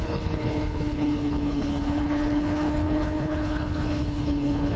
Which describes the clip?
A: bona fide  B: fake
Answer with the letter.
B